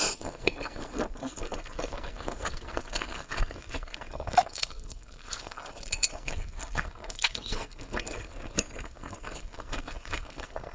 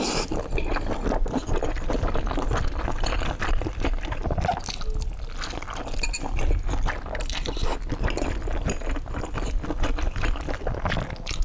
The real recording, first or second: second